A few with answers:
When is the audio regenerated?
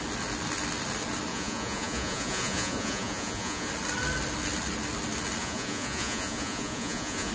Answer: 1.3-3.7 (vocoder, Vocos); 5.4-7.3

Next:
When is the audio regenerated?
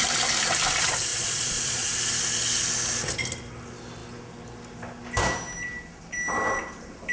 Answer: 1.1-1.9 (vocoder, Vocos)